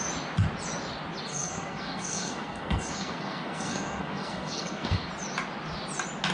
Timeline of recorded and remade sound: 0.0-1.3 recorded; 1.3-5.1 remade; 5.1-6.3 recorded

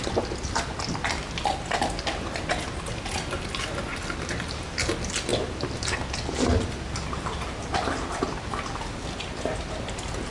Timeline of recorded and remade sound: 0.0-10.3 recorded

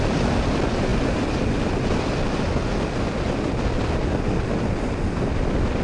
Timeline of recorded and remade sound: 0.0-5.8 recorded

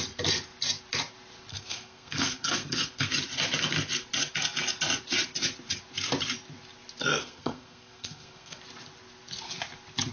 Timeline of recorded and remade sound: 0.0-1.5 recorded; 1.5-3.1 remade; 3.1-7.2 recorded; 7.2-8.6 remade; 8.6-10.1 recorded

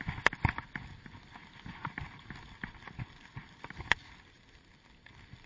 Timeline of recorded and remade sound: 0.0-5.5 recorded

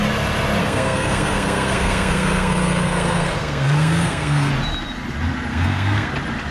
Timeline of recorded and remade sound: 0.0-0.6 recorded; 0.6-4.5 remade; 4.5-5.5 recorded; 5.5-6.1 remade; 6.1-6.5 recorded